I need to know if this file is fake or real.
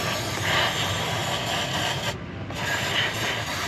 real